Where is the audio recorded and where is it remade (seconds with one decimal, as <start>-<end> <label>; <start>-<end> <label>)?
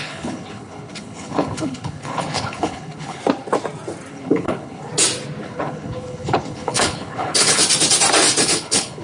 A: 0.0-3.2 remade; 3.2-4.1 recorded; 4.1-4.9 remade; 4.9-5.4 recorded; 5.4-7.6 remade; 7.6-8.4 recorded; 8.4-9.0 remade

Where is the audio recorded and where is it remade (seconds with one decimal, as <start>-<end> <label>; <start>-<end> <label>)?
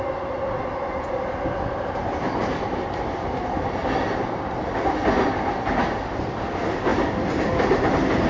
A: 0.0-6.9 recorded; 6.9-7.9 remade; 7.9-8.3 recorded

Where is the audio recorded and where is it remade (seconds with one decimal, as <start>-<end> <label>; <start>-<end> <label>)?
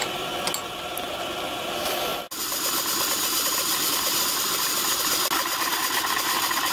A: 0.0-6.7 recorded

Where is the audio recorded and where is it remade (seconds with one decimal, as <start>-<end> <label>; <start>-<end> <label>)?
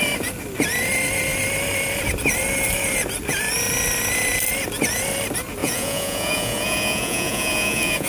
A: 0.0-5.6 recorded; 5.6-8.1 remade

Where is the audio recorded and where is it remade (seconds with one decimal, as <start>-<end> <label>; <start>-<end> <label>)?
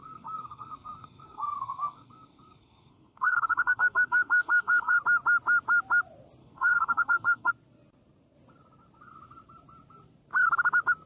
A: 0.0-5.0 remade; 5.0-6.4 recorded; 6.4-7.5 remade; 7.5-11.1 recorded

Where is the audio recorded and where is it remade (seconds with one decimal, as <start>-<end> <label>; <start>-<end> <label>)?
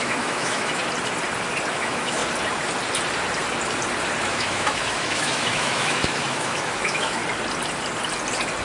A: 0.0-0.8 remade; 0.8-1.7 recorded; 1.7-2.2 remade; 2.2-4.2 recorded; 4.2-7.2 remade; 7.2-8.6 recorded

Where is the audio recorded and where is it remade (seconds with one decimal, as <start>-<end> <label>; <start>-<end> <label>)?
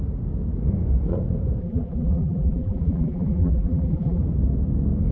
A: 0.0-1.6 recorded; 1.6-4.2 remade; 4.2-5.1 recorded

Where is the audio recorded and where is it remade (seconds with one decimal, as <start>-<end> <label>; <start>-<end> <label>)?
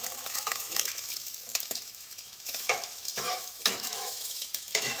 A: 0.0-5.0 remade